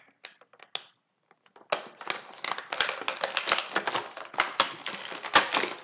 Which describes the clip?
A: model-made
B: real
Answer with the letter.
B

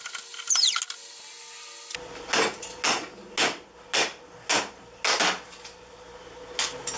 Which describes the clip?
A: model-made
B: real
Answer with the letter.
B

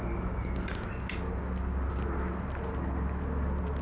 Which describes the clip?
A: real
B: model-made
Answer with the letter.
A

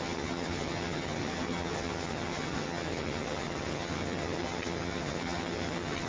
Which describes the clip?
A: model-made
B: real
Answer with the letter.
A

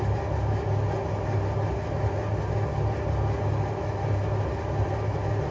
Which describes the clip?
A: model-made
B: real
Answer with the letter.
B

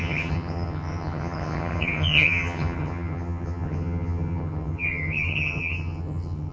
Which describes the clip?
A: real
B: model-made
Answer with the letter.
B